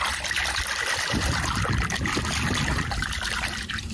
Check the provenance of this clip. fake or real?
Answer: real